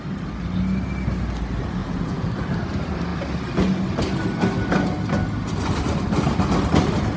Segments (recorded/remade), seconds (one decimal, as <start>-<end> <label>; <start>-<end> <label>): 0.0-1.8 recorded; 1.8-2.3 remade; 2.3-7.2 recorded